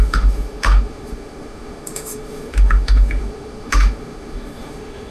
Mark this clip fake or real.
fake